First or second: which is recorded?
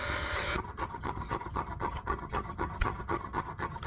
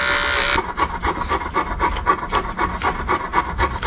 second